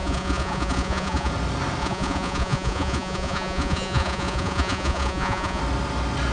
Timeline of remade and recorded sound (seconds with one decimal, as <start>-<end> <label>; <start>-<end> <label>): 0.0-1.3 remade; 1.3-1.8 recorded; 1.8-5.6 remade; 5.6-6.3 recorded